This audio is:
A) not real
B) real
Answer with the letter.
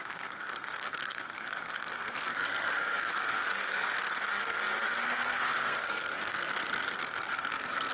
A